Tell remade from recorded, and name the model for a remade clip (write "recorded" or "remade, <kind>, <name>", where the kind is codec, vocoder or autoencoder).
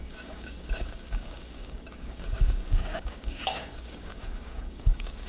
remade, codec, DAC